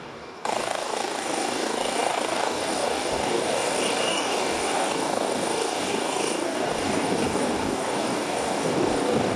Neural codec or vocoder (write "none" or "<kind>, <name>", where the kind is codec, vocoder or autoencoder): codec, DAC